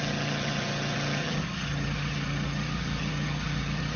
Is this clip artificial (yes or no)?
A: yes